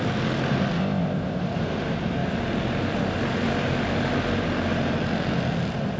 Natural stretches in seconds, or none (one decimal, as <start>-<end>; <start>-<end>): 0.0-0.8; 1.4-6.0